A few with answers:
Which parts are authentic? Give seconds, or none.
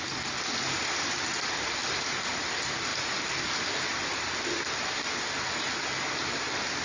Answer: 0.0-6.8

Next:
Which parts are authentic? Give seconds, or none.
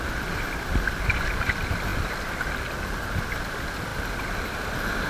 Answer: 0.0-5.1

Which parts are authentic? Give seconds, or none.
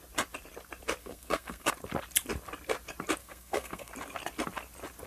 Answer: 0.0-1.0; 1.7-3.2; 3.9-5.1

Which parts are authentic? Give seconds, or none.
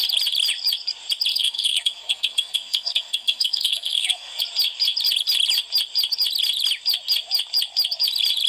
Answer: 0.0-1.3; 4.4-8.5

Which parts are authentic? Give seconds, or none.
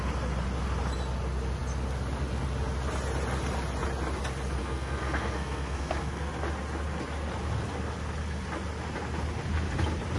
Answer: 0.0-4.6; 6.3-10.2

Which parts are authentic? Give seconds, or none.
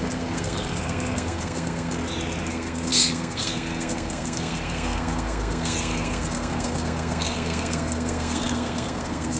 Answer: 2.0-2.5